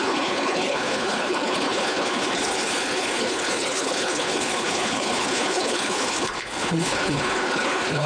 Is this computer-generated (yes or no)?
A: yes